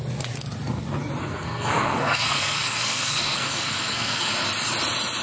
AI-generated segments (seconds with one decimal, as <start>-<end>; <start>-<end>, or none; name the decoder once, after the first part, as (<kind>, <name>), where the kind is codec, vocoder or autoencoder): 1.2-4.3 (codec, SNAC)